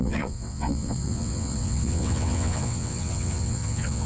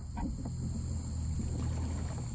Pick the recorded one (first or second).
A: second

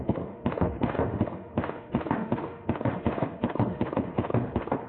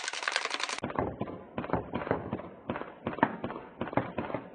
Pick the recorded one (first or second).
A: second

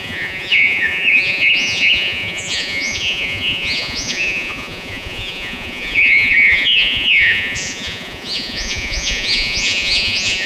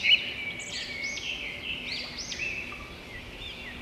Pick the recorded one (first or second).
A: second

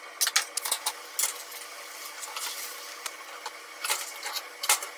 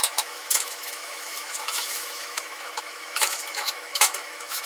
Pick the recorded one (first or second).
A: first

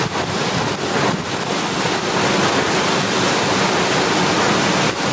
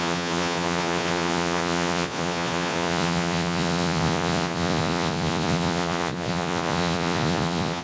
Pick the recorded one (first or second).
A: first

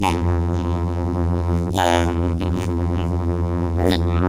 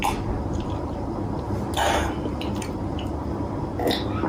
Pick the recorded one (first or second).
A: second